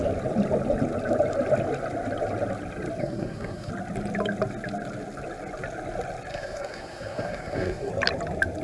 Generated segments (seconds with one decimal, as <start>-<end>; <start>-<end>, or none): 3.0-3.7; 6.3-7.9

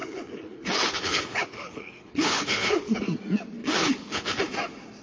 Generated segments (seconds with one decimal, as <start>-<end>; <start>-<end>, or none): 0.0-3.0; 3.6-4.4

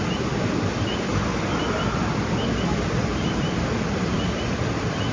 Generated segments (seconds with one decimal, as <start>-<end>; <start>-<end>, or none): 3.1-5.1

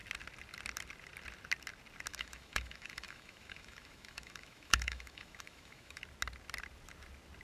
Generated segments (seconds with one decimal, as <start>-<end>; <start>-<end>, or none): 2.1-6.0